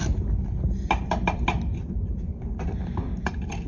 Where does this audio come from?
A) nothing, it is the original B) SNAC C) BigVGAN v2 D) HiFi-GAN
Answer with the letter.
A